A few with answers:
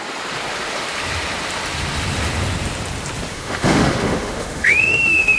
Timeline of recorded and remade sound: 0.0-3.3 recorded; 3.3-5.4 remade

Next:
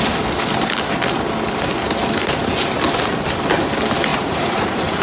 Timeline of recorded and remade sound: 0.0-4.1 recorded; 4.1-5.0 remade

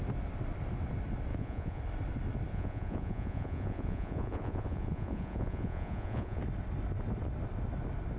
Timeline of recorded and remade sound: 0.0-1.3 recorded; 1.3-1.8 remade; 1.8-2.5 recorded; 2.5-6.4 remade; 6.4-8.2 recorded

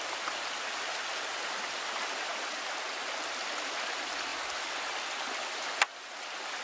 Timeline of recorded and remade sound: 0.0-6.6 recorded

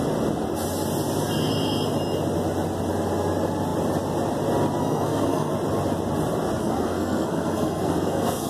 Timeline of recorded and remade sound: 0.0-4.8 recorded; 4.8-5.5 remade; 5.5-6.6 recorded; 6.6-8.5 remade

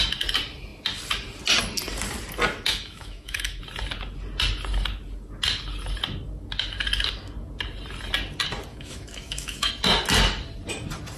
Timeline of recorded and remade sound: 0.0-2.7 recorded; 2.7-3.6 remade; 3.6-8.7 recorded; 8.7-9.7 remade; 9.7-11.2 recorded